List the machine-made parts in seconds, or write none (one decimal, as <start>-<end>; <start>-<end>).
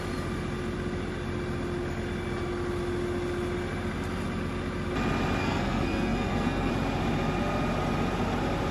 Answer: 5.4-6.7